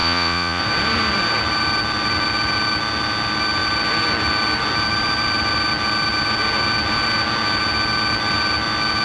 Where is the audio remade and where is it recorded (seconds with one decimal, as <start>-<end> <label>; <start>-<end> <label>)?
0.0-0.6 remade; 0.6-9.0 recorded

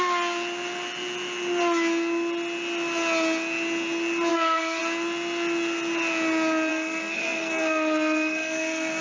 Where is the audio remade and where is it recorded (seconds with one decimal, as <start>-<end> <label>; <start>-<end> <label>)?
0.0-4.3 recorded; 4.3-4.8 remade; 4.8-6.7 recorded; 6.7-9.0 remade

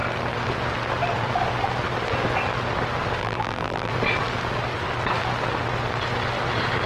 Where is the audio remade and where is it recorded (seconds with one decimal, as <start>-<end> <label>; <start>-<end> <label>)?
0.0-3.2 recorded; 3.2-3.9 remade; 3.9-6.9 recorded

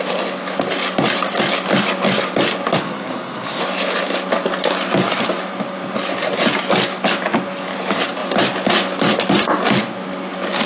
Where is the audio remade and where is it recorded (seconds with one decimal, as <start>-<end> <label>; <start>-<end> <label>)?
0.0-2.8 recorded; 2.8-3.6 remade; 3.6-10.7 recorded

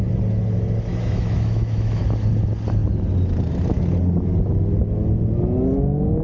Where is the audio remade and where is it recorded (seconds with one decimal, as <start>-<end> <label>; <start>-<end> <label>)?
0.0-0.9 recorded; 0.9-2.0 remade; 2.0-6.2 recorded

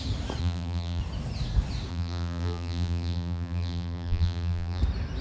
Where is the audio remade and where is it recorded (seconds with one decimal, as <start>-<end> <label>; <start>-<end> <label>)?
0.0-0.4 recorded; 0.4-1.0 remade; 1.0-1.9 recorded; 1.9-4.8 remade; 4.8-5.2 recorded